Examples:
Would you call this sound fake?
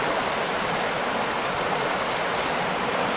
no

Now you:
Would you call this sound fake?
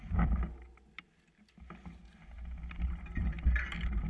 no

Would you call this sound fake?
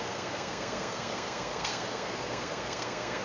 yes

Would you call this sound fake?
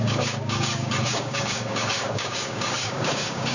yes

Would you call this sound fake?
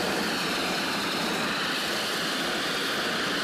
no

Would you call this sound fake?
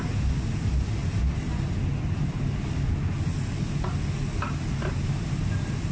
no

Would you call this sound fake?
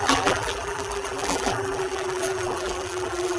yes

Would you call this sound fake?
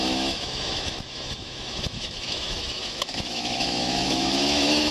yes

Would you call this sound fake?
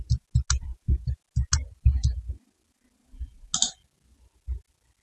no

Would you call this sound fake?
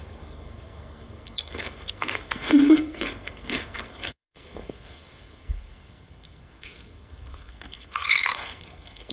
yes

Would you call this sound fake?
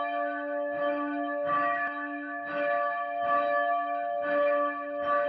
yes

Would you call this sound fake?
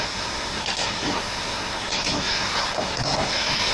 yes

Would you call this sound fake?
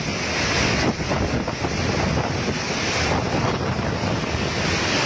no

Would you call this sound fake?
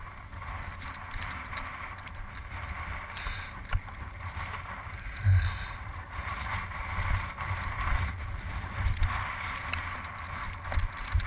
no